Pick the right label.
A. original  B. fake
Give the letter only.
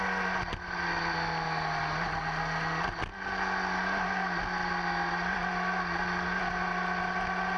A